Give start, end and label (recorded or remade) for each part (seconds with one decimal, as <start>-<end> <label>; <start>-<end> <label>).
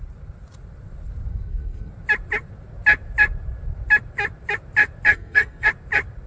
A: 0.0-1.3 recorded; 1.3-1.9 remade; 1.9-5.1 recorded; 5.1-5.7 remade; 5.7-6.3 recorded